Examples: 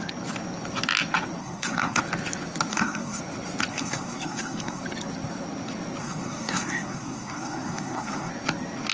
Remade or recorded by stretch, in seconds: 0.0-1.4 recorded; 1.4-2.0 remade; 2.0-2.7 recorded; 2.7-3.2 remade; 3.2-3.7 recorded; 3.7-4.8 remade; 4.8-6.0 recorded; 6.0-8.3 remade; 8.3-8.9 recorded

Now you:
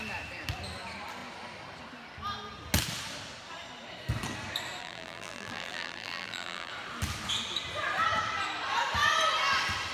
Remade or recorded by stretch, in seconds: 0.0-4.8 recorded; 4.8-6.7 remade; 6.7-9.9 recorded

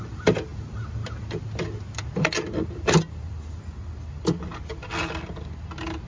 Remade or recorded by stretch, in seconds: 0.0-6.1 recorded

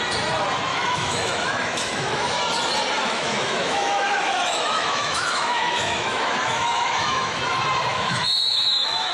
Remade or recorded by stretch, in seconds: 0.0-0.7 recorded; 0.7-2.4 remade; 2.4-3.0 recorded; 3.0-7.4 remade; 7.4-7.9 recorded; 7.9-9.1 remade

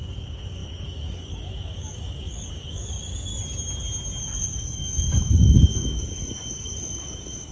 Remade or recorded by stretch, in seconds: 0.0-3.3 remade; 3.3-4.2 recorded; 4.2-7.5 remade

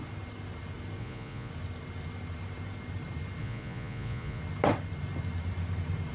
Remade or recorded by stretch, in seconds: 0.0-1.0 recorded; 1.0-1.5 remade; 1.5-3.4 recorded; 3.4-4.4 remade; 4.4-6.1 recorded

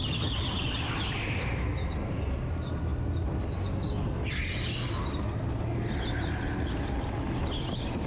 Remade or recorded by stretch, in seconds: 0.0-8.1 recorded

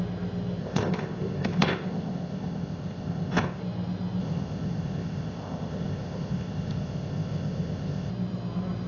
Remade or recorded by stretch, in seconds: 0.0-0.6 recorded; 0.6-3.6 remade; 3.6-4.2 recorded; 4.2-8.1 remade; 8.1-8.9 recorded